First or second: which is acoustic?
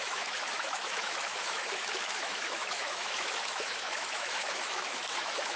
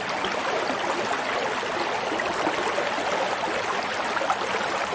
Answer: second